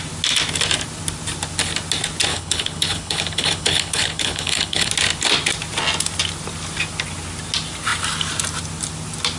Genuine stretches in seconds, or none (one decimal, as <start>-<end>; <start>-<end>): 0.0-2.3; 4.9-9.4